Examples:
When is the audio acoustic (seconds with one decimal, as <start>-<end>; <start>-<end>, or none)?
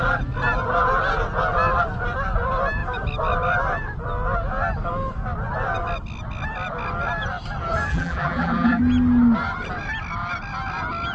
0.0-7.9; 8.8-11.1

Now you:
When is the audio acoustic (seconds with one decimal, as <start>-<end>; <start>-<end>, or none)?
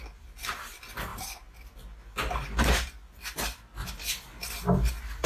0.0-5.3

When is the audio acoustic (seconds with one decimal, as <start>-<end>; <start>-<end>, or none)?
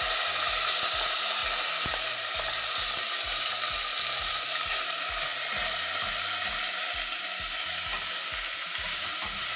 0.0-3.9; 4.7-5.3; 6.4-9.6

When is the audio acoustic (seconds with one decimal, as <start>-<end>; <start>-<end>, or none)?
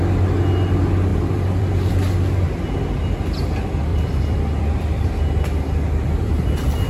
0.0-1.1; 1.9-3.9; 5.1-6.9